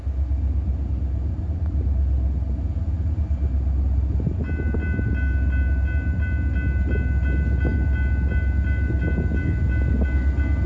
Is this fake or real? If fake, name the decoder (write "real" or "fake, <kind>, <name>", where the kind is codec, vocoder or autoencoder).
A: real